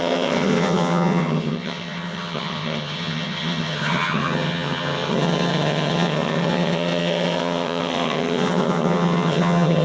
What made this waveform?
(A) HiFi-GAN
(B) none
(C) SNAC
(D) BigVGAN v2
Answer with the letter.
A